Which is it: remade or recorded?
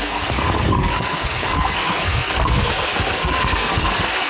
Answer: remade